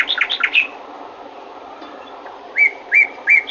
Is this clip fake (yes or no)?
no